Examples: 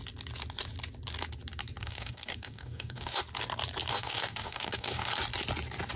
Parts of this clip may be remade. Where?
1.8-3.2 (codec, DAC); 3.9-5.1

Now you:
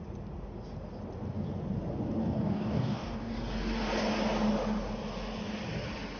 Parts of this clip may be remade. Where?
2.2-3.3 (codec, DAC)

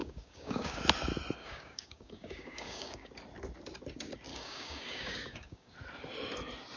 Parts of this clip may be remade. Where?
0.0-0.8 (codec, DAC); 1.4-3.1; 4.3-5.7

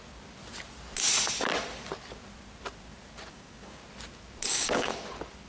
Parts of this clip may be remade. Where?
3.3-3.8 (codec, DAC); 4.5-4.9

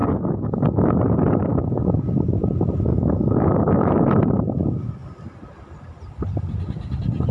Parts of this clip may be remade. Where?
0.0-0.9 (codec, DAC); 2.9-3.9

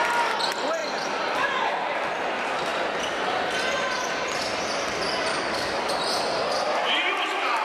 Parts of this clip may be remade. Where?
5.3-5.9 (codec, DAC)

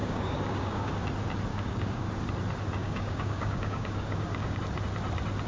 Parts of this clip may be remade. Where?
0.0-0.9 (codec, DAC); 1.5-2.1; 2.8-4.6